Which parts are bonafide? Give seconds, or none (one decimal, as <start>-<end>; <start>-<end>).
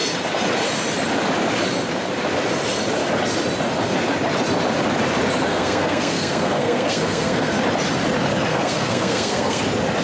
0.0-5.5; 7.5-8.5; 9.6-10.0